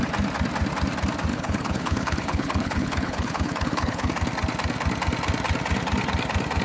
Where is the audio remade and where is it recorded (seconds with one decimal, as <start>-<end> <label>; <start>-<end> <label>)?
0.0-1.3 recorded; 1.3-4.1 remade; 4.1-6.6 recorded